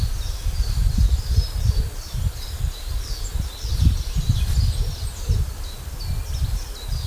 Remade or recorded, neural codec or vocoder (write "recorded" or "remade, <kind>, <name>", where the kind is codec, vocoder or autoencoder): recorded